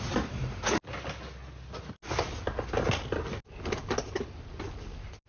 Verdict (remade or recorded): recorded